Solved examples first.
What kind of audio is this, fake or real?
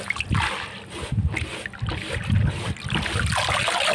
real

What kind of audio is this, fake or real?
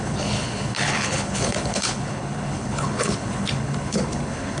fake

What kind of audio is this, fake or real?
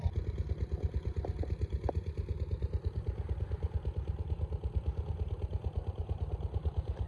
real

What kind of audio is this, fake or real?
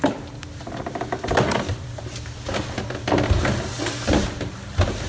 real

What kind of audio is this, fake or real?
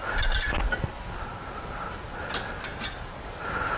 real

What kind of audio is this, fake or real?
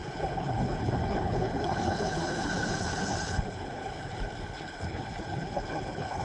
fake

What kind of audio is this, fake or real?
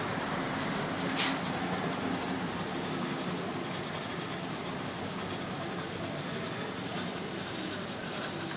real